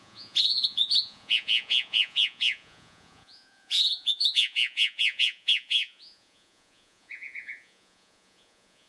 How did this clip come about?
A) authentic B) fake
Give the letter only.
B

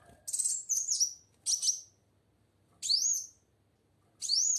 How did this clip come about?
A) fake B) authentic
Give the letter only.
B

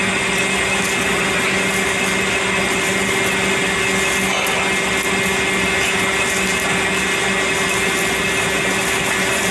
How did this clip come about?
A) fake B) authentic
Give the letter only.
B